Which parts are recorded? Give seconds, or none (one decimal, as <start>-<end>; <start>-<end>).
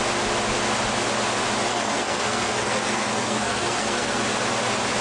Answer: 0.0-1.7; 4.2-5.0